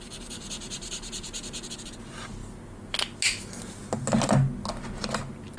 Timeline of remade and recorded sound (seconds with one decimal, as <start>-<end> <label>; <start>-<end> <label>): 0.0-5.6 recorded